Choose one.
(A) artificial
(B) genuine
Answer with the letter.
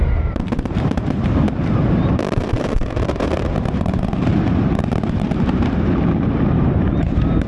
A